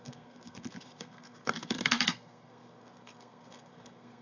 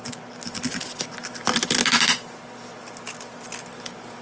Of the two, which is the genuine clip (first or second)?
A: second